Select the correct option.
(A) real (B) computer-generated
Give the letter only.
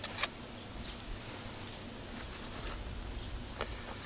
A